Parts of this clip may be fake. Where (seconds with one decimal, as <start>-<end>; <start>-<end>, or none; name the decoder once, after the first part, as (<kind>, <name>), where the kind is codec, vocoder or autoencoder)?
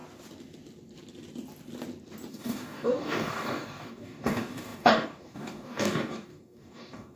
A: 2.3-7.2 (codec, DAC)